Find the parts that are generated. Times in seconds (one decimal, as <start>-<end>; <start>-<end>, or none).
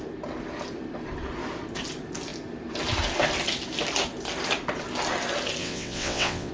5.6-6.5